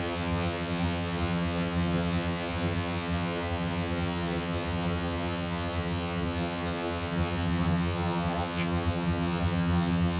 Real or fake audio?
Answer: fake